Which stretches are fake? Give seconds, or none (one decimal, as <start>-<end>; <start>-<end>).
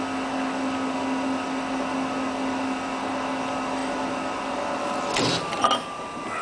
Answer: none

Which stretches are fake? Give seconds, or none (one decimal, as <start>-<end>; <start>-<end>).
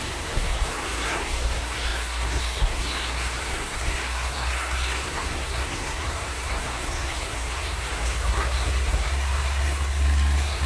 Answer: 0.0-10.7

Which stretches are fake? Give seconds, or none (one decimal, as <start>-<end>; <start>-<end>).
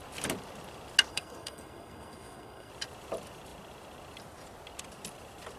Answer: 1.1-2.7